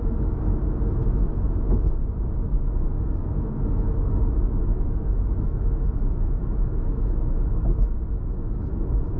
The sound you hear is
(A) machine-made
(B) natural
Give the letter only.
A